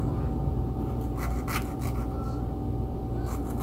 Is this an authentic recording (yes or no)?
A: yes